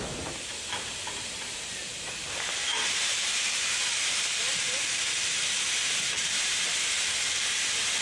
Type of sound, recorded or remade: remade